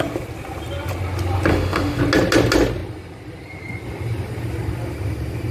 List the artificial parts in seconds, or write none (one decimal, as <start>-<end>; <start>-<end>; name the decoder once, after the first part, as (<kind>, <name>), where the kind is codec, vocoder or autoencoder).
1.5-2.0 (autoencoder, DAC-VAE)